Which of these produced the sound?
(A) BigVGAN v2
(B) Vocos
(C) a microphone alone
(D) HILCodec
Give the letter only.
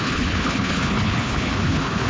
D